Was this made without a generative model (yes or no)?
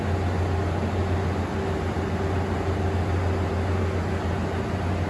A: yes